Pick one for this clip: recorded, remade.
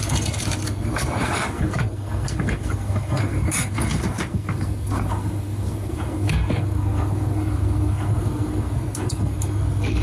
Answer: remade